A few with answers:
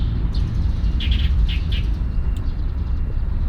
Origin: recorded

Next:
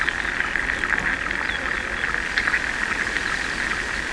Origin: recorded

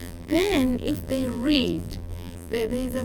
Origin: remade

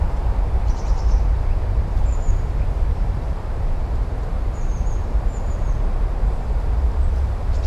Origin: remade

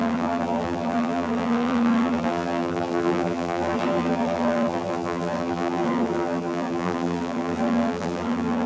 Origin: remade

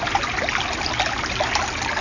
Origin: recorded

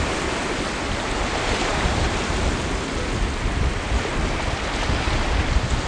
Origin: recorded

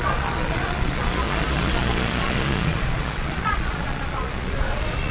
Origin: remade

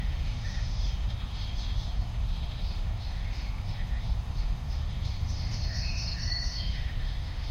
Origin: remade